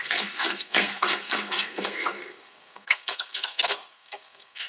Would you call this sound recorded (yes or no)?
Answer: no